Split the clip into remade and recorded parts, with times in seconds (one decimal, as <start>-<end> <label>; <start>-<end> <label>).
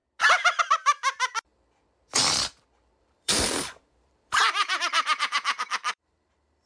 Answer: 0.0-0.6 recorded; 0.6-1.5 remade; 1.5-3.0 recorded; 3.0-6.7 remade